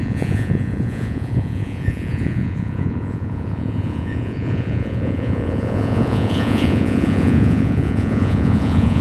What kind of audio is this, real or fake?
fake